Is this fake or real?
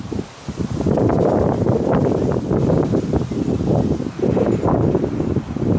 real